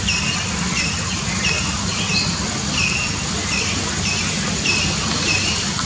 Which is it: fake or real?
real